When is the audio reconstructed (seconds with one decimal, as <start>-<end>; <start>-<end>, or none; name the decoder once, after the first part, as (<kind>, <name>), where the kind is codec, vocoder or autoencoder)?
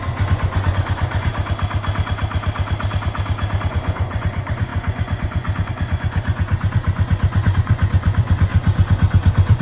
0.0-1.3 (vocoder, Vocos); 3.7-9.6